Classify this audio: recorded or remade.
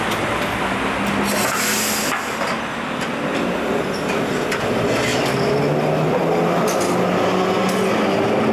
recorded